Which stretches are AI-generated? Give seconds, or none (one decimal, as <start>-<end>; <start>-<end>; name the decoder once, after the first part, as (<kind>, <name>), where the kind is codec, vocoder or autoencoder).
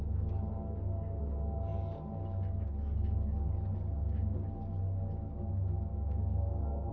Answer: 5.9-6.9 (codec, DAC)